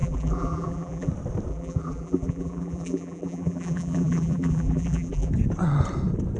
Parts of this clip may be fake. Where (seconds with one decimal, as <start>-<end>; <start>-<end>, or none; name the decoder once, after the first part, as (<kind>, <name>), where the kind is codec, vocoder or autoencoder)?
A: 0.0-1.1 (vocoder, BigVGAN v2); 1.5-5.3